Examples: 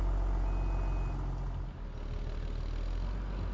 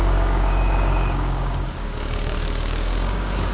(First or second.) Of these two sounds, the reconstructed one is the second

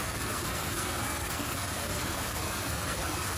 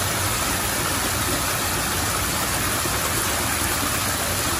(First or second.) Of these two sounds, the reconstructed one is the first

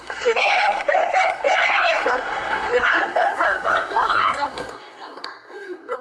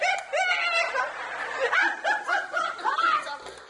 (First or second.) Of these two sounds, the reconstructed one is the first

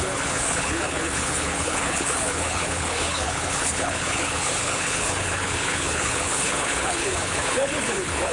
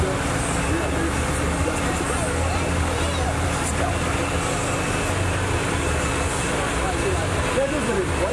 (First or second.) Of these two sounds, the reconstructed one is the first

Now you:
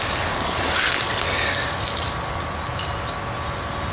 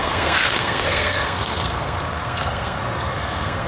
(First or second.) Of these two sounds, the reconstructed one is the second